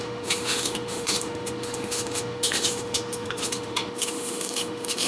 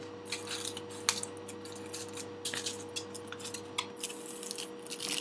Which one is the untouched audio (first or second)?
second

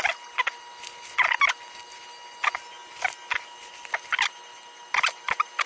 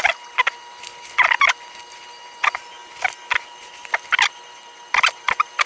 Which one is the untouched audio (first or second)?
first